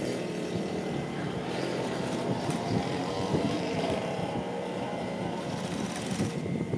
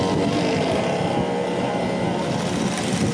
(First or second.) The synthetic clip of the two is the first